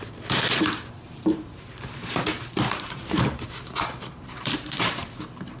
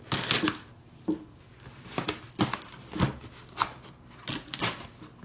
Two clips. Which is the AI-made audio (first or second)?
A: first